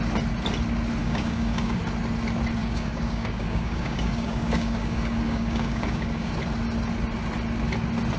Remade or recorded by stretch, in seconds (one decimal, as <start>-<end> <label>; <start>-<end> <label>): 0.0-1.0 recorded; 1.0-1.8 remade; 1.8-2.6 recorded; 2.6-6.3 remade; 6.3-8.2 recorded